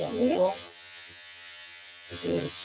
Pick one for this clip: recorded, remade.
remade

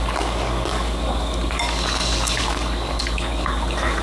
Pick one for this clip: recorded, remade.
remade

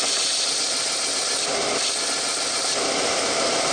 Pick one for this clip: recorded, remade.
recorded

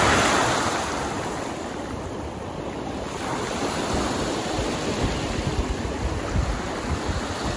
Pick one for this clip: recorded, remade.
recorded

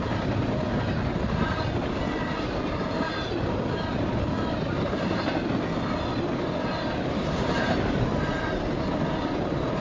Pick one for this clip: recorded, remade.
recorded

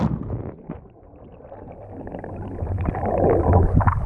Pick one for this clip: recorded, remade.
recorded